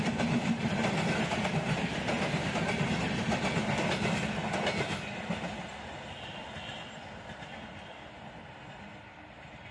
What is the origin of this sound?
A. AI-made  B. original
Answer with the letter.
B